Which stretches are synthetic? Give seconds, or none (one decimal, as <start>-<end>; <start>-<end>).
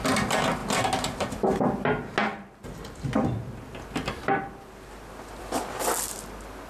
none